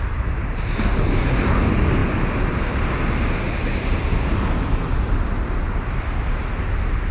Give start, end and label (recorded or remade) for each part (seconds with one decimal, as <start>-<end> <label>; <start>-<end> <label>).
0.0-7.1 recorded